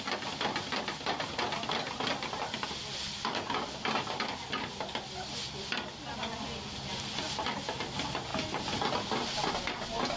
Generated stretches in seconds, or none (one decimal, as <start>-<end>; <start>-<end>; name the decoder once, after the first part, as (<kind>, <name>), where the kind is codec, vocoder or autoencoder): none